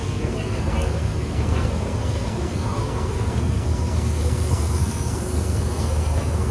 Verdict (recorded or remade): remade